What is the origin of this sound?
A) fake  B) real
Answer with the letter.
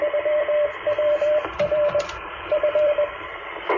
A